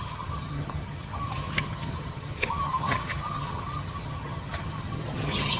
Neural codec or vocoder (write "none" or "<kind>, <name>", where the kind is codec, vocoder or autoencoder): vocoder, HiFi-GAN